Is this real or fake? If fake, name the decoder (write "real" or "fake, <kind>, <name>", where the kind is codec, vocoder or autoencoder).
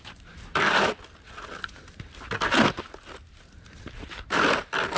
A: real